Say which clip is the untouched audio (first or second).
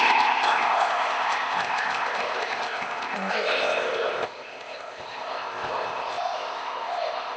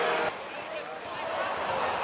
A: second